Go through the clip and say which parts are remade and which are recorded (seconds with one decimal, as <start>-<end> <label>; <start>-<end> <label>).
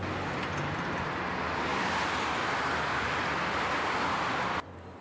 0.0-5.0 recorded